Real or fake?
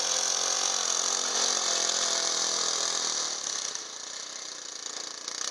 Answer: real